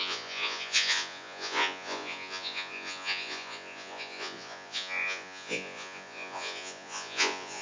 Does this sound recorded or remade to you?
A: remade